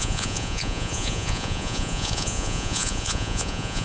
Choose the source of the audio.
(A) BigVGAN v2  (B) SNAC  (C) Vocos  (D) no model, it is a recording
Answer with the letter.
C